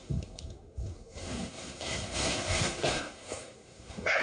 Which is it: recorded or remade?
remade